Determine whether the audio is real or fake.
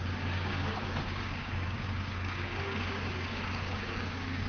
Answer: fake